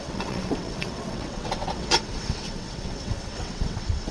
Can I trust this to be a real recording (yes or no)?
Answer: no